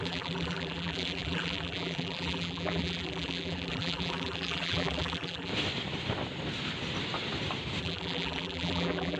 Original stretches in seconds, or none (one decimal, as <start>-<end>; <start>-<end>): 5.5-7.8